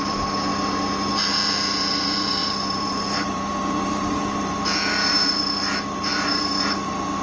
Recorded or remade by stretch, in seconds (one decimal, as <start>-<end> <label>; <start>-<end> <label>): 0.0-0.5 remade; 0.5-1.1 recorded; 1.1-7.2 remade